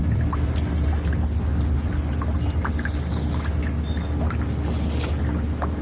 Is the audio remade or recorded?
recorded